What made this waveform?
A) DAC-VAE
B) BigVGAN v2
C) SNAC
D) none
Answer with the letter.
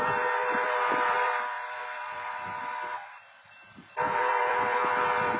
B